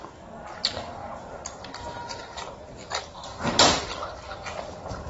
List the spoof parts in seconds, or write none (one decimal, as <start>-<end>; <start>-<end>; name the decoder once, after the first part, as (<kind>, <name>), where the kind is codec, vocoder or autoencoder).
1.0-3.8 (vocoder, BigVGAN v2)